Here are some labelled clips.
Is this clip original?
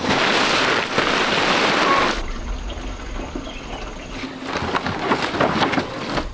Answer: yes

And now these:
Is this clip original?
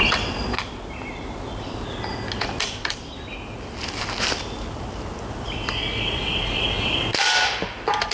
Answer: yes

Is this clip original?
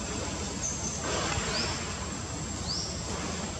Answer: yes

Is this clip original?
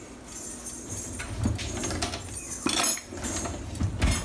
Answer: yes